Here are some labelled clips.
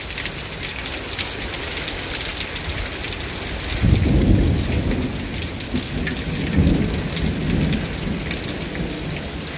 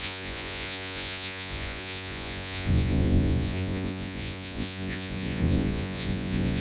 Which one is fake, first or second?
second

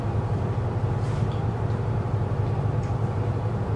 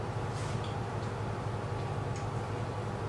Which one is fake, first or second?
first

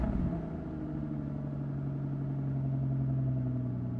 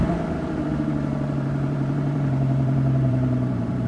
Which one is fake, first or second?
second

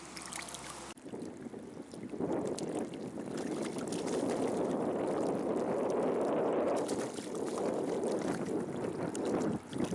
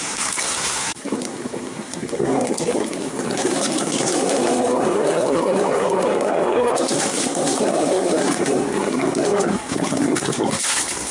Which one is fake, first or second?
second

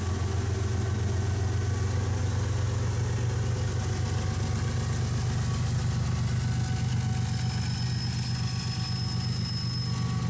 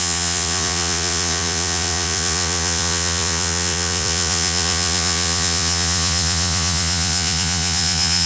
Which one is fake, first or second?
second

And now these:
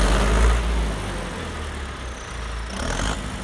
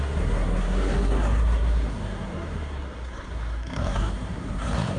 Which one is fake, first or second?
second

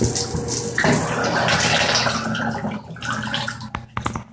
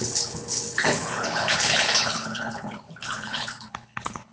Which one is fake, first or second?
second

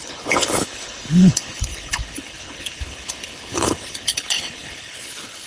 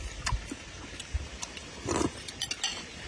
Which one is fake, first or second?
first